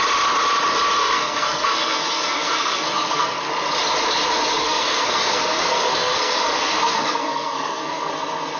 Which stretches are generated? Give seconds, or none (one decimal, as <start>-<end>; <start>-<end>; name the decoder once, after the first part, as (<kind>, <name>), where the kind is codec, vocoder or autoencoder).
1.0-3.5 (codec, SNAC); 4.6-8.1